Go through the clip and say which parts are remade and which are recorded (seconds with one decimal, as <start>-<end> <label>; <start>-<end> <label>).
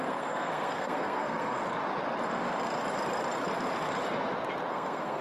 0.0-1.6 remade; 1.6-4.7 recorded; 4.7-5.2 remade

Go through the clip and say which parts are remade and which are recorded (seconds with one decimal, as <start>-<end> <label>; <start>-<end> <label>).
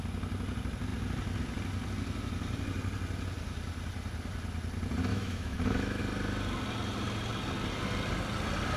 0.0-5.1 recorded; 5.1-6.0 remade; 6.0-8.8 recorded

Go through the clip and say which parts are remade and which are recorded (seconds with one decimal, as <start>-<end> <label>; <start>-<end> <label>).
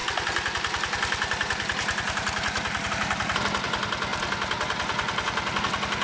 0.0-6.0 recorded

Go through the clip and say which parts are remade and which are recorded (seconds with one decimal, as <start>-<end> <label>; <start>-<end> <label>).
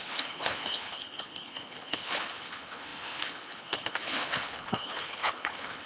0.0-5.9 remade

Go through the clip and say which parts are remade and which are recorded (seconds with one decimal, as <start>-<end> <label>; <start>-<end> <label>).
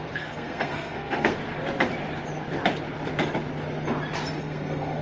0.0-1.4 remade; 1.4-4.4 recorded; 4.4-5.0 remade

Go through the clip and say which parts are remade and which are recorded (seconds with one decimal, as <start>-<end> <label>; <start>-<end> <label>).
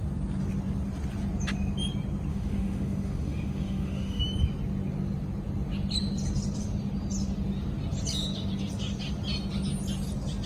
0.0-2.3 recorded; 2.3-4.2 remade; 4.2-10.5 recorded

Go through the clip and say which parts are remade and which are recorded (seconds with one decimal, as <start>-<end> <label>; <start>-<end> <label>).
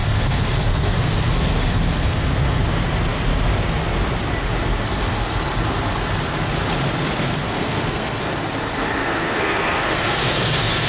0.0-2.6 remade; 2.6-7.4 recorded; 7.4-8.2 remade; 8.2-9.0 recorded; 9.0-10.9 remade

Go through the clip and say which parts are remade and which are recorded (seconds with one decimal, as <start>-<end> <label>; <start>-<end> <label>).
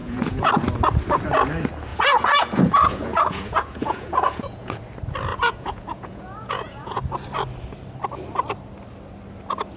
0.0-0.5 remade; 0.5-1.9 recorded; 1.9-4.8 remade; 4.8-5.3 recorded; 5.3-7.0 remade; 7.0-9.8 recorded